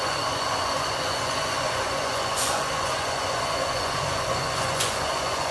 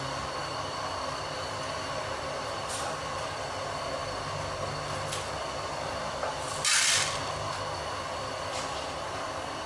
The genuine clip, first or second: second